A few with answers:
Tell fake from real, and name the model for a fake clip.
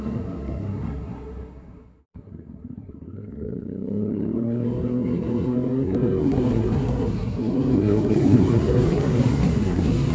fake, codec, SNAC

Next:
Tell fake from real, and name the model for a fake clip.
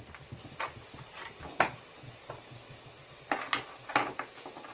real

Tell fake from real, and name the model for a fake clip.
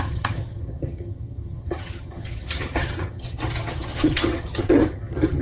fake, vocoder, HiFi-GAN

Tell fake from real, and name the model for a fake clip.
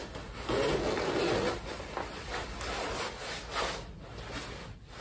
real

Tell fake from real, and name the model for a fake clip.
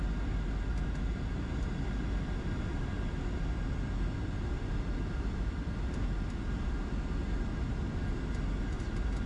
real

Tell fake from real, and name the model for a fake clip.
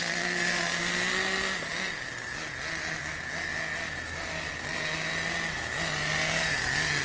real